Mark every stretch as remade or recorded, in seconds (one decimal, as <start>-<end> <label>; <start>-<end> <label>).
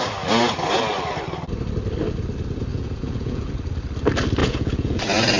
0.0-2.7 recorded; 2.7-3.5 remade; 3.5-4.4 recorded; 4.4-5.0 remade; 5.0-5.4 recorded